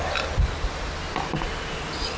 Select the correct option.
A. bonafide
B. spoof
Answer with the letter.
A